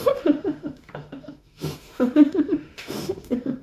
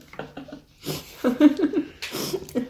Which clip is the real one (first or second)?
second